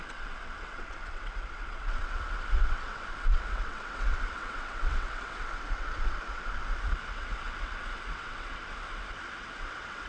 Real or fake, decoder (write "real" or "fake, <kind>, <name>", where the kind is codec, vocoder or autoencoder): fake, vocoder, WaveNeXt